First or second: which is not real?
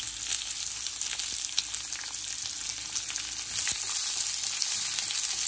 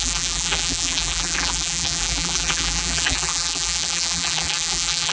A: second